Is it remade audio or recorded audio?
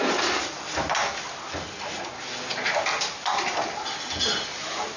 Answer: recorded